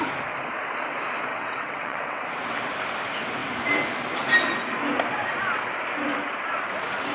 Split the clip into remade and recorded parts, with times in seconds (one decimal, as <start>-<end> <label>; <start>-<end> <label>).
0.0-1.3 recorded; 1.3-2.2 remade; 2.2-7.1 recorded